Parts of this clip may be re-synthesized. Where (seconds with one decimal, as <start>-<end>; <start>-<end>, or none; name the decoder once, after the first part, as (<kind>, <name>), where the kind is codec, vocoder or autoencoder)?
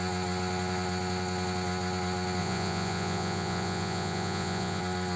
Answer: 2.4-4.8 (vocoder, Vocos)